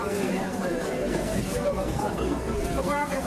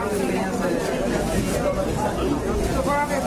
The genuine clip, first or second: second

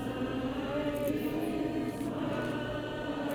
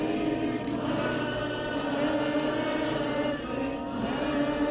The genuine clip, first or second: second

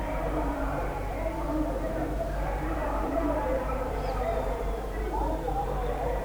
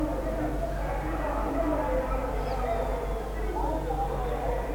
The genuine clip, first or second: second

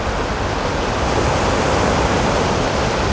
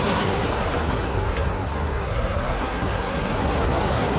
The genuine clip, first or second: first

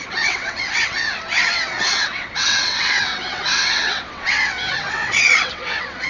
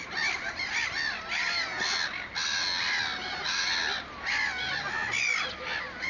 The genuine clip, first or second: second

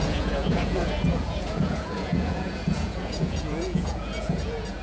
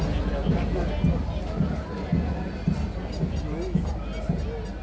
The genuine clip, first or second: second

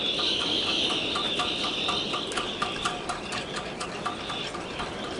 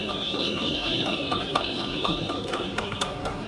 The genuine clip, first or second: first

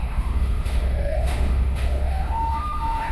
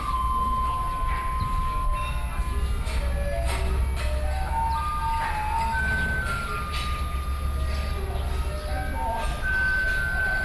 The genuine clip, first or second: second